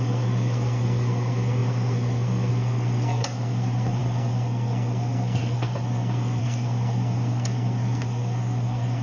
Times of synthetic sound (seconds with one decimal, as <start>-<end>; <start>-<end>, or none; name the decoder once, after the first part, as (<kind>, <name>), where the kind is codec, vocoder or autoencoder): 0.0-9.0 (codec, SNAC)